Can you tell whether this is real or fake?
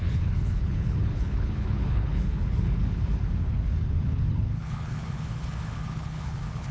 fake